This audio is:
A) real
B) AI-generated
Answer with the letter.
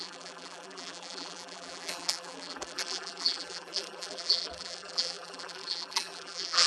B